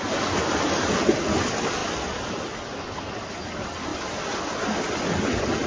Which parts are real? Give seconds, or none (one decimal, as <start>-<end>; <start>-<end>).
0.0-5.7